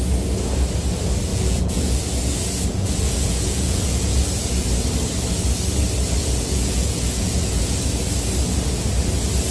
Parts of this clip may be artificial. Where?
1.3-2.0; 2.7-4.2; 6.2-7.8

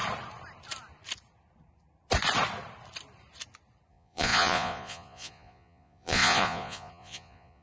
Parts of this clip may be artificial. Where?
3.9-7.6

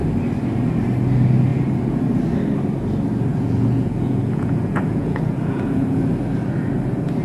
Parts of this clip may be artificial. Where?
3.3-6.1

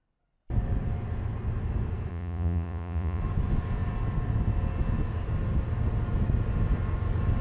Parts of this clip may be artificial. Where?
2.1-3.2

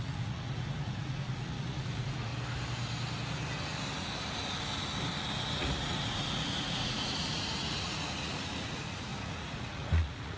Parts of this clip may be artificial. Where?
0.0-2.3; 5.6-10.4